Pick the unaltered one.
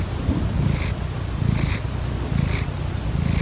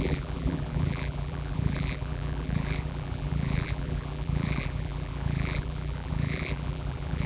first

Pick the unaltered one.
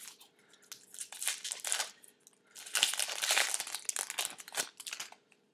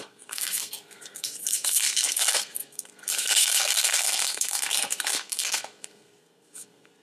first